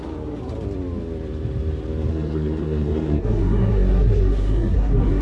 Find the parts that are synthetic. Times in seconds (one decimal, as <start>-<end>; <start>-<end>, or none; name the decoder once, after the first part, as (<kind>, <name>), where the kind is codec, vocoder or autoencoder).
2.1-5.2 (codec, SNAC)